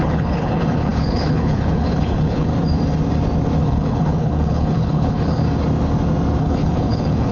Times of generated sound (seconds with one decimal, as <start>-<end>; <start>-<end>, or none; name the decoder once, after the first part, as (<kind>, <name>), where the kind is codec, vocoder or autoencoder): 0.0-2.5 (codec, HILCodec); 3.6-5.4; 6.4-7.3